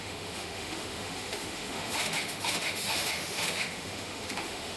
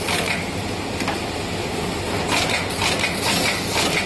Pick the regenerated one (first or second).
first